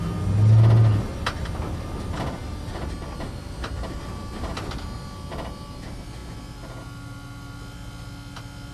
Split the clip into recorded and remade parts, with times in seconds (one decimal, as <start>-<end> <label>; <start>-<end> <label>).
0.0-8.7 recorded